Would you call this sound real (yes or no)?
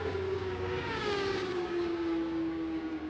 no